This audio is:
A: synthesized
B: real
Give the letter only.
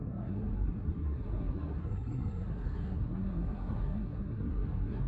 A